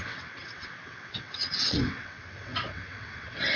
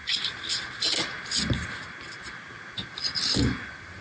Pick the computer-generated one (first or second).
first